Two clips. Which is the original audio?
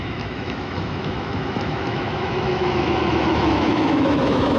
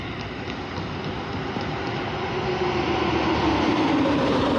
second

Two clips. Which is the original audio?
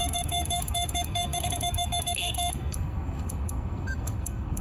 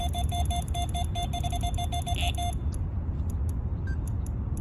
second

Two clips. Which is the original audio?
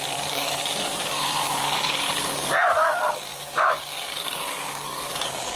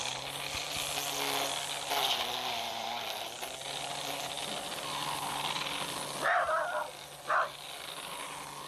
second